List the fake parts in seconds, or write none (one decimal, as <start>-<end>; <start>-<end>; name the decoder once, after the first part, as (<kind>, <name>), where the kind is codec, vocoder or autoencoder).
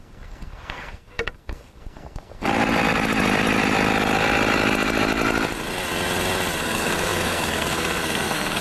0.0-2.5 (codec, SNAC); 6.6-8.6